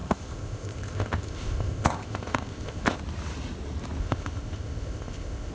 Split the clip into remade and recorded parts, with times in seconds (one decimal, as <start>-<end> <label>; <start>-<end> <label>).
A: 0.0-3.0 remade; 3.0-4.0 recorded; 4.0-5.5 remade